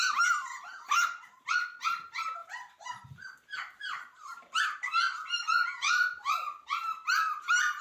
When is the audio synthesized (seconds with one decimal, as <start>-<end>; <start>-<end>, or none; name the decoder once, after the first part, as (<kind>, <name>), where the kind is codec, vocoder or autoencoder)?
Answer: none